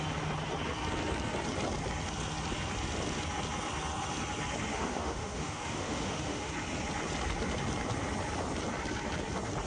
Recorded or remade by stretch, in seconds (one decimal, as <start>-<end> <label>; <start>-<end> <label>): 0.0-4.7 recorded; 4.7-6.5 remade; 6.5-9.7 recorded